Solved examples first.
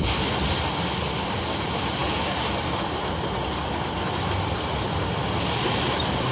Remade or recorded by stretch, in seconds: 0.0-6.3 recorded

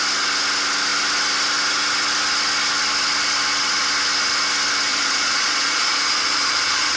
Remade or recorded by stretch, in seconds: 0.0-4.9 recorded; 4.9-7.0 remade